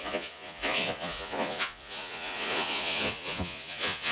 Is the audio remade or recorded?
remade